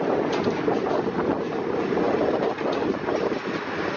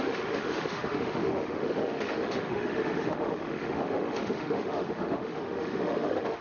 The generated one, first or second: second